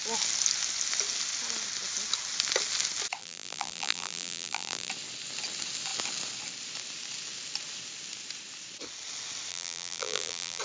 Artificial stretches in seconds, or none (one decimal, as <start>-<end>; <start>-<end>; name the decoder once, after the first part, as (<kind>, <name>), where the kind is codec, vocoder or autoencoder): 3.2-4.9 (vocoder, BigVGAN v2); 9.5-10.6